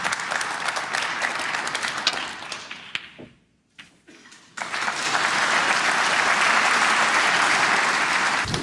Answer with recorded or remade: recorded